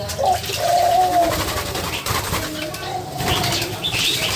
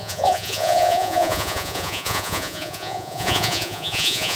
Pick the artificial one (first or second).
second